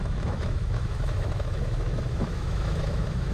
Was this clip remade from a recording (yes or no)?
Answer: yes